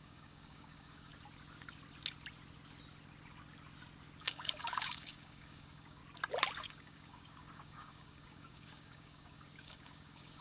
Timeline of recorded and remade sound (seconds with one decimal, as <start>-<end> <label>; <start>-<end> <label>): 0.0-1.1 remade; 1.1-4.2 recorded; 4.2-6.0 remade; 6.0-6.6 recorded; 6.6-10.4 remade